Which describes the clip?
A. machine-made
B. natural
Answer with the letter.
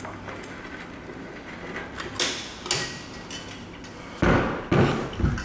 B